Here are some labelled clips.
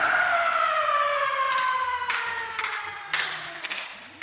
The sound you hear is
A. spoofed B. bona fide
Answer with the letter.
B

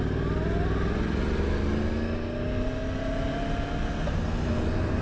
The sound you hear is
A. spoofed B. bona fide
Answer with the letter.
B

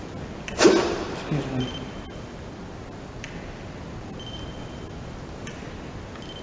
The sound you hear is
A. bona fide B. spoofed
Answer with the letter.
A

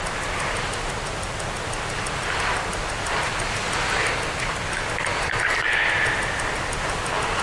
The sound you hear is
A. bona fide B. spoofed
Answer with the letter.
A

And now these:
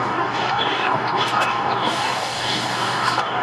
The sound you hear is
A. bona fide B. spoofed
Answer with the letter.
B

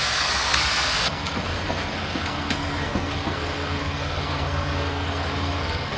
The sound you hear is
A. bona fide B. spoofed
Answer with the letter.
B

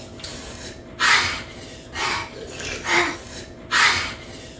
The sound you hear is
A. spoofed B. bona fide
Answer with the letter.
B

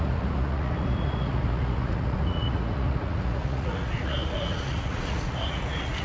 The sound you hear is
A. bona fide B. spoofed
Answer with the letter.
B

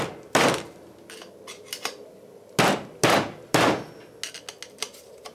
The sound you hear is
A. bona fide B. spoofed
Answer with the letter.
A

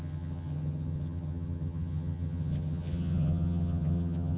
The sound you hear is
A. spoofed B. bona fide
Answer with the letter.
A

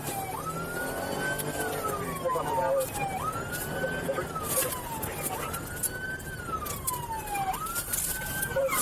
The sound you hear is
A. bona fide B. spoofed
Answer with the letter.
A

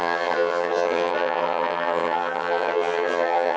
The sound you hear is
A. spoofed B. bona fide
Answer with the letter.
A